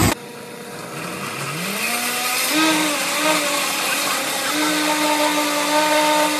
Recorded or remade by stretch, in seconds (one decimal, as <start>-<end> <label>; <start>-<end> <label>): 0.0-6.4 recorded